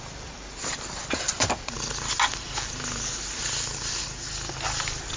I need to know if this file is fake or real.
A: real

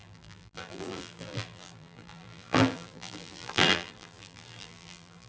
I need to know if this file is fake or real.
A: fake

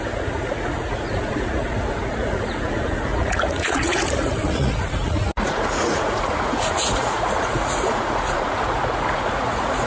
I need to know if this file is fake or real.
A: fake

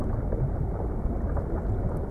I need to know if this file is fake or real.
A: real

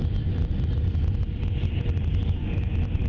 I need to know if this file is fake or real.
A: fake